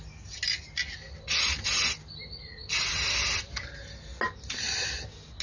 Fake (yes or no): no